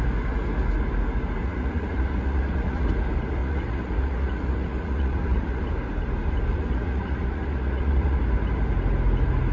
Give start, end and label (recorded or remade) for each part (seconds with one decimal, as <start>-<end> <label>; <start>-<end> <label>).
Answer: 0.0-1.4 recorded; 1.4-2.9 remade; 2.9-3.4 recorded; 3.4-5.6 remade; 5.6-6.5 recorded; 6.5-8.2 remade; 8.2-9.5 recorded